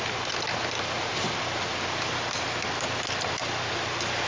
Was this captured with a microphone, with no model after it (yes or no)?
yes